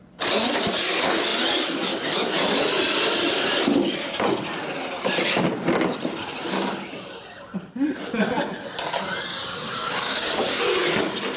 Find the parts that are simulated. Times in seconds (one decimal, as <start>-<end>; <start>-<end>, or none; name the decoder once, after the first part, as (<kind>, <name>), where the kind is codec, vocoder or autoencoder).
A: 9.3-10.6 (codec, DAC)